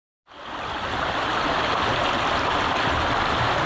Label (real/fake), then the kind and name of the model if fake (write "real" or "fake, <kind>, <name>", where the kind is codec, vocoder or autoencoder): real